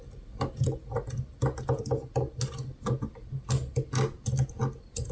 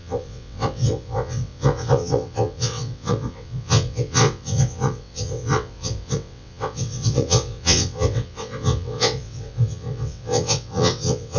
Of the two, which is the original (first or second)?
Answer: first